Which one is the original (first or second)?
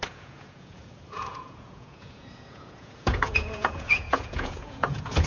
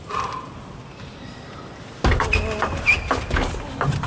second